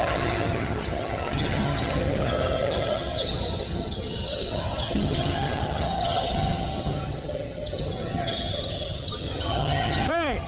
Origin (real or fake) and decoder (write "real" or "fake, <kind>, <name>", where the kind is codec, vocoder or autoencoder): fake, vocoder, HiFi-GAN